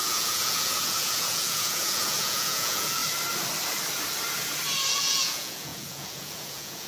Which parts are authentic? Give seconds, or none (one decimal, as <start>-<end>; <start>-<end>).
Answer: 3.0-4.9